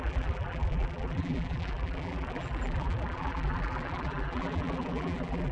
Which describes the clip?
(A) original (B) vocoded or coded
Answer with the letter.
B